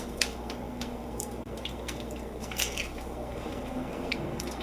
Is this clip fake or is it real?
fake